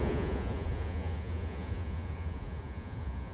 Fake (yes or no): yes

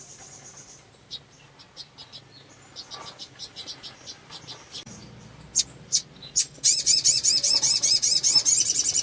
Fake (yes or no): no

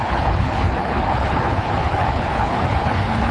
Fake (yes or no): yes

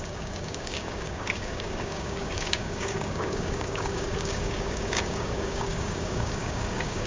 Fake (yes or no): yes